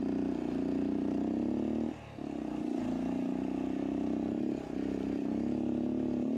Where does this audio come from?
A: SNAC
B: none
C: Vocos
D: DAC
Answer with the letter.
B